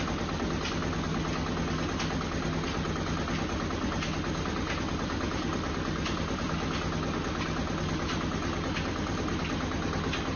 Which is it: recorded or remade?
recorded